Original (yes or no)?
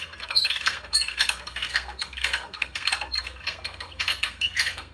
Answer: no